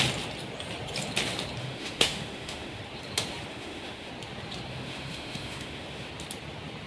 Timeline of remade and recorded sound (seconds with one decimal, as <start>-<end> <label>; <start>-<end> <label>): 0.0-1.6 recorded; 1.6-2.8 remade; 2.8-3.5 recorded; 3.5-4.1 remade; 4.1-4.7 recorded; 4.7-6.1 remade; 6.1-6.9 recorded